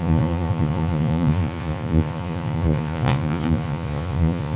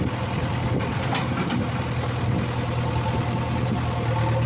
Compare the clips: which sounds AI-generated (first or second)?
first